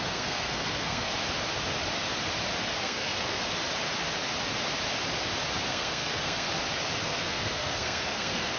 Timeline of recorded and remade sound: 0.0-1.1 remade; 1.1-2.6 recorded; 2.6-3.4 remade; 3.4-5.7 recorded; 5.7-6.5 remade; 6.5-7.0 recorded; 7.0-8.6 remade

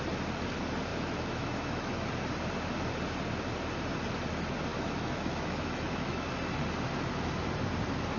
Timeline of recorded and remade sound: 0.0-0.9 recorded; 0.9-2.1 remade; 2.1-4.7 recorded; 4.7-6.3 remade; 6.3-8.2 recorded

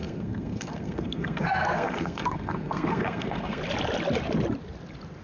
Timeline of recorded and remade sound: 0.0-3.6 remade; 3.6-5.2 recorded

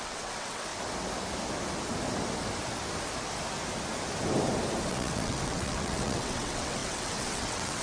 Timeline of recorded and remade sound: 0.0-0.7 remade; 0.7-4.9 recorded; 4.9-7.8 remade

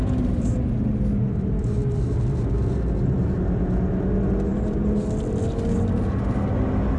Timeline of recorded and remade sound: 0.0-7.0 recorded

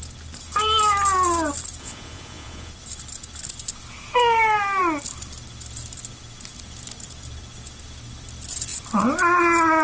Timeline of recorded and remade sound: 0.0-1.8 recorded; 1.8-2.7 remade; 2.7-9.8 recorded

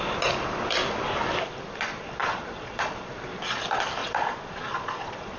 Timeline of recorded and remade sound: 0.0-2.2 recorded; 2.2-3.1 remade; 3.1-4.0 recorded; 4.0-5.4 remade